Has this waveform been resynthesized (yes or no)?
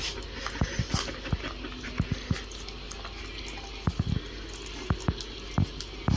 no